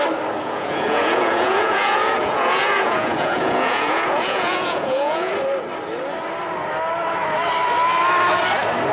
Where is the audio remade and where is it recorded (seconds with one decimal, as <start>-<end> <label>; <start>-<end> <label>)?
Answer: 0.0-0.4 recorded; 0.4-5.3 remade; 5.3-8.9 recorded

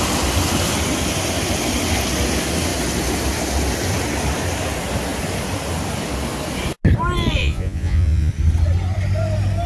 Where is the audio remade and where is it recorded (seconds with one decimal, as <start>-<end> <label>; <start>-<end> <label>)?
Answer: 0.0-7.4 recorded; 7.4-8.3 remade; 8.3-9.7 recorded

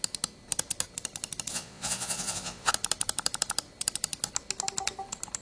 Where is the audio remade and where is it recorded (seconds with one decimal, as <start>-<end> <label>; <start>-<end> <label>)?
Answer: 0.0-1.5 recorded; 1.5-2.7 remade; 2.7-5.4 recorded